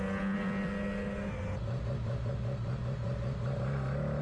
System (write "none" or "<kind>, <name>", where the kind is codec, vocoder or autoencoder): none